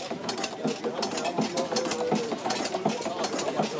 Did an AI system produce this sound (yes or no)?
no